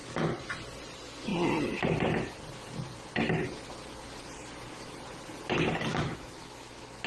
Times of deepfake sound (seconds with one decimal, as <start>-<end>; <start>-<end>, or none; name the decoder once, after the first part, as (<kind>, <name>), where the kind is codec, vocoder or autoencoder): 5.9-7.1 (autoencoder, DAC-VAE)